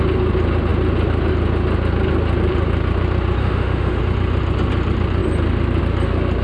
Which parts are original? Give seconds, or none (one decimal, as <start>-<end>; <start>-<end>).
0.0-3.4; 4.0-6.4